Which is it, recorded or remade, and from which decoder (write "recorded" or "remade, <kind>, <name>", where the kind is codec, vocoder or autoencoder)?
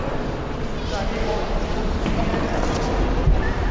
recorded